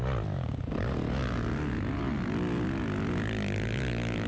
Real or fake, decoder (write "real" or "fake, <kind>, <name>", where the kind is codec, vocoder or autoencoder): real